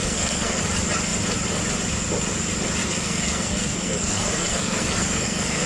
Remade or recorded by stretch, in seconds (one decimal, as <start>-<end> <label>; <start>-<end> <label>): 0.0-0.6 remade; 0.6-2.8 recorded; 2.8-5.7 remade